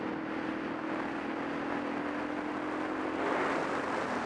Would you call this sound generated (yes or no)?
no